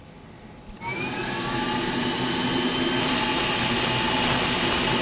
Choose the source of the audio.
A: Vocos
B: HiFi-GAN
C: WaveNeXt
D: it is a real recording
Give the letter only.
D